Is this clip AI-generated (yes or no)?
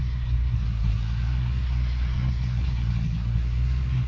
yes